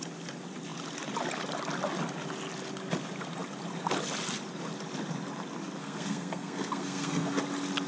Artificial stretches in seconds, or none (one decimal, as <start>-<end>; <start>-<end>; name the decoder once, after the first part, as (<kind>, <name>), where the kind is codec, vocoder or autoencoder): 5.8-7.4 (codec, SNAC)